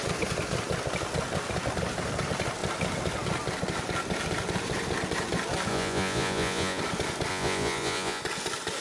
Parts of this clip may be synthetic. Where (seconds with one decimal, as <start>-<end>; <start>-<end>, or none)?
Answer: 5.7-6.8; 7.3-8.2